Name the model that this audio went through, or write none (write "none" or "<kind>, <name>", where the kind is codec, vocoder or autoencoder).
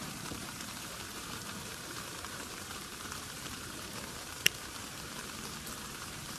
vocoder, BigVGAN v2